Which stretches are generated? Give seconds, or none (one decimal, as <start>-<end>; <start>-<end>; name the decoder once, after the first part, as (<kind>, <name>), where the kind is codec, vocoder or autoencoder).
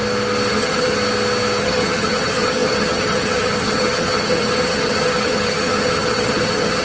0.5-1.0 (vocoder, HiFi-GAN); 1.6-6.8